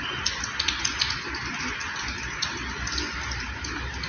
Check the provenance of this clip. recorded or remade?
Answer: recorded